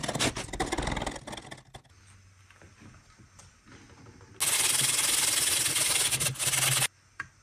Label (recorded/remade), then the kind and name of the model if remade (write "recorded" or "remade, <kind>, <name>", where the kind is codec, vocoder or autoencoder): recorded